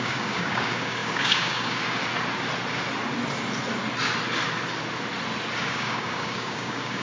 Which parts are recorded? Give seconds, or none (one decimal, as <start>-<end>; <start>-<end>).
2.0-5.6